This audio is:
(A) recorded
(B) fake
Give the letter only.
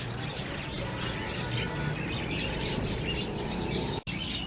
A